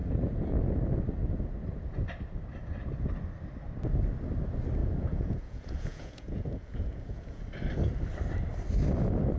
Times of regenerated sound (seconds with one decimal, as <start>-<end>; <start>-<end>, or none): 4.8-7.4